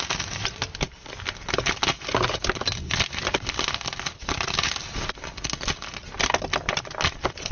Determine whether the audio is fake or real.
real